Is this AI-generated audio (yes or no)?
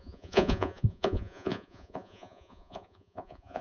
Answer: yes